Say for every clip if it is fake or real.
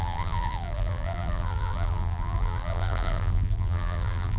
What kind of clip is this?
fake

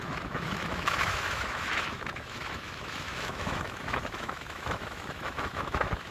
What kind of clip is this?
fake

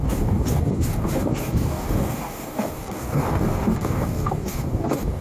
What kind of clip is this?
fake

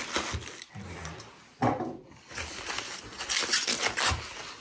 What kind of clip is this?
real